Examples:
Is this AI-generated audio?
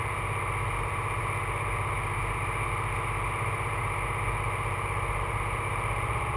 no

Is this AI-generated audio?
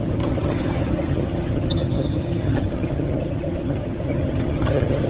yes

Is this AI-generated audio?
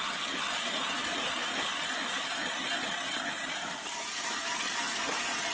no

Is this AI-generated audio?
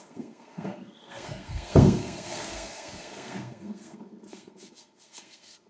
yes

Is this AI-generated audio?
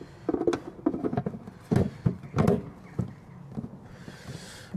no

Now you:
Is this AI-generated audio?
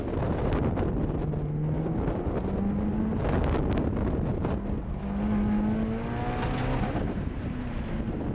no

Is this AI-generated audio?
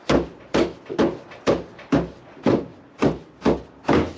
no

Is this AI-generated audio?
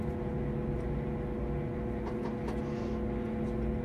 no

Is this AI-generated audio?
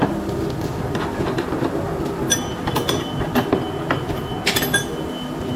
no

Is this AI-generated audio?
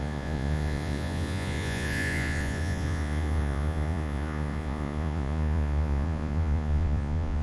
yes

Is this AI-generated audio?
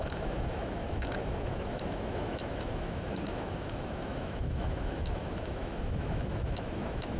yes